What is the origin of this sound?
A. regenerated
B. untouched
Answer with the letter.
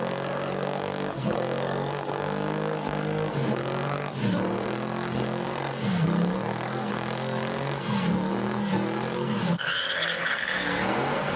A